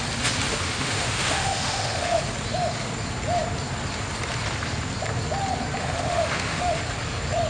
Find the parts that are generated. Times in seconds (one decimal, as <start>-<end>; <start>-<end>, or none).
0.5-2.2; 5.8-6.8